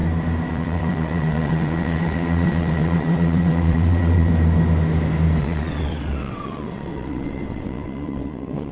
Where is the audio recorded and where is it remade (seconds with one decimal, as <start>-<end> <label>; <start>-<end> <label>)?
0.0-0.5 recorded; 0.5-4.3 remade; 4.3-5.4 recorded; 5.4-8.7 remade